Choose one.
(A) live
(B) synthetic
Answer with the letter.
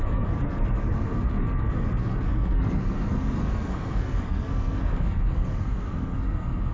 B